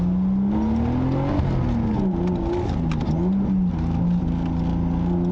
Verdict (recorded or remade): recorded